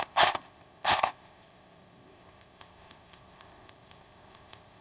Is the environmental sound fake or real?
fake